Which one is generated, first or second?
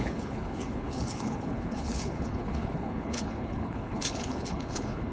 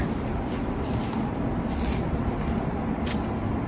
first